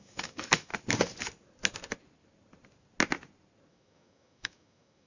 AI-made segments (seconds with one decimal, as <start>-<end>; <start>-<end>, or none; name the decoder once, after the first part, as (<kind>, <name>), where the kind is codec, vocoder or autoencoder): 0.0-0.7 (autoencoder, DAC-VAE); 3.7-5.1